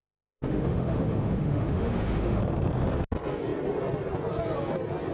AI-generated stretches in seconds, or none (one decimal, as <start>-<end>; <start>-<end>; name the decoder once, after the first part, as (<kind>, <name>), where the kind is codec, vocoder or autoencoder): 0.0-2.4 (autoencoder, DAC-VAE)